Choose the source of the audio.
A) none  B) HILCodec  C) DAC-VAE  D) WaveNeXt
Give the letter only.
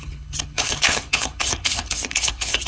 B